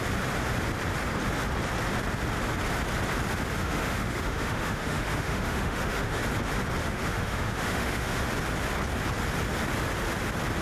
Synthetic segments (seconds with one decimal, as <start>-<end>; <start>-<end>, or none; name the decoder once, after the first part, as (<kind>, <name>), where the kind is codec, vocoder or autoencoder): 3.6-6.2 (autoencoder, DAC-VAE); 6.8-8.3